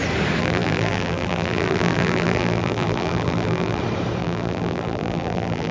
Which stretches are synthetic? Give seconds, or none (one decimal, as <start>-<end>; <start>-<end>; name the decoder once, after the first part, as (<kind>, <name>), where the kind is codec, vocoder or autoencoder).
0.4-3.8 (vocoder, BigVGAN v2); 4.2-5.7